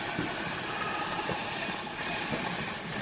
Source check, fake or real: real